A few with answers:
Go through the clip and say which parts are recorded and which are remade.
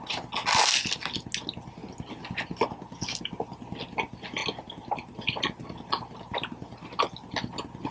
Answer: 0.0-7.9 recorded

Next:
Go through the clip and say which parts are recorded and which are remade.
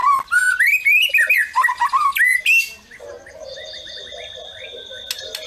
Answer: 0.0-5.5 recorded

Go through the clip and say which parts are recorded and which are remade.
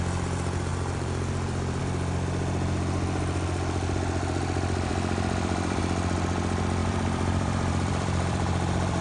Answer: 0.0-0.7 recorded; 0.7-1.8 remade; 1.8-4.9 recorded; 4.9-5.8 remade; 5.8-6.8 recorded; 6.8-9.0 remade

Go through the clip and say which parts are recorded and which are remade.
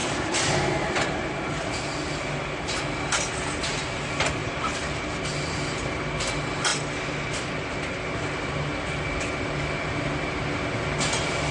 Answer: 0.0-0.8 remade; 0.8-4.4 recorded; 4.4-6.1 remade; 6.1-11.5 recorded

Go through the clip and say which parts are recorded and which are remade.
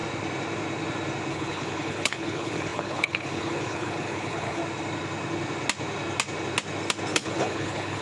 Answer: 0.0-1.3 recorded; 1.3-4.6 remade; 4.6-7.1 recorded; 7.1-8.0 remade